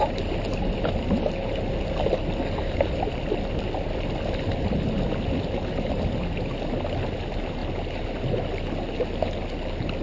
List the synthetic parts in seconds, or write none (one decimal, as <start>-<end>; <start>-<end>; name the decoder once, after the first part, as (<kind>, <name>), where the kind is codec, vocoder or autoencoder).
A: none